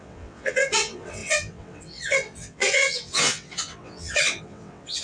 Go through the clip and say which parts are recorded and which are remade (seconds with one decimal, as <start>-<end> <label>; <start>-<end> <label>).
0.0-5.0 remade